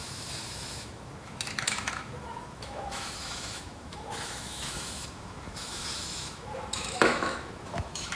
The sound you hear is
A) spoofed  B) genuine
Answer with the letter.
A